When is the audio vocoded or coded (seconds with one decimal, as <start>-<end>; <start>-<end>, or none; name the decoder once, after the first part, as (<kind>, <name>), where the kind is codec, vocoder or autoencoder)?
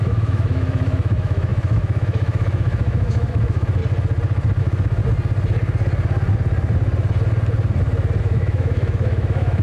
0.0-3.8 (autoencoder, DAC-VAE); 4.6-5.0; 8.2-9.6